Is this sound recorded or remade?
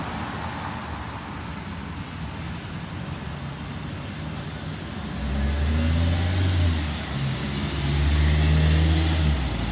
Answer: recorded